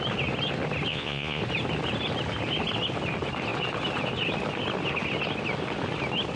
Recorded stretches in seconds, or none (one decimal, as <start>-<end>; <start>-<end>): 0.0-0.9; 1.4-6.4